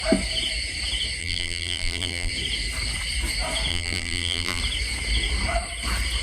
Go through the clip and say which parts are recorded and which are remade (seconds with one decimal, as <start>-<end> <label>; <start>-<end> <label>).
0.0-1.2 recorded; 1.2-2.3 remade; 2.3-3.7 recorded; 3.7-4.6 remade; 4.6-6.2 recorded